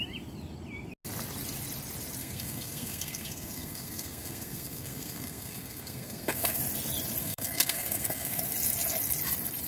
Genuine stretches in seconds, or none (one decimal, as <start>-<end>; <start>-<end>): 0.0-2.2; 6.6-7.2; 8.4-9.7